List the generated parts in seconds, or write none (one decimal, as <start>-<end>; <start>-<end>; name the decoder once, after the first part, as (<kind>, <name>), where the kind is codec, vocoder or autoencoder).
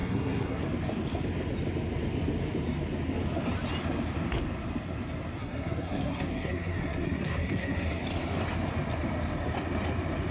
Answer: 0.0-0.6 (codec, SNAC); 5.4-8.0